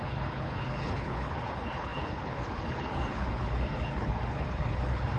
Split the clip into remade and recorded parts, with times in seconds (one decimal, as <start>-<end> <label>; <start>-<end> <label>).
0.0-5.2 remade